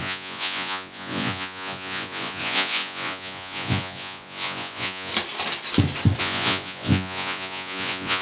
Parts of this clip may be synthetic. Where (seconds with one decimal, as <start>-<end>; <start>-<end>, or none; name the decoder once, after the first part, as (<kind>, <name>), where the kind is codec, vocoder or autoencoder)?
0.0-5.1 (vocoder, Vocos); 6.2-8.2